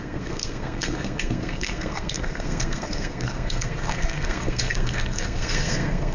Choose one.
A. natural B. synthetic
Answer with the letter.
B